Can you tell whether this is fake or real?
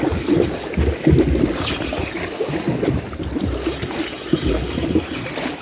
real